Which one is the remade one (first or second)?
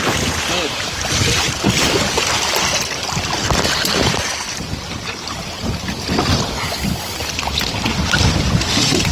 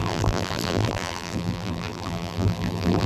second